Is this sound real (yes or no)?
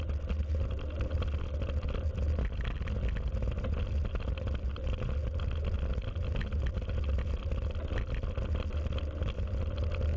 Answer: yes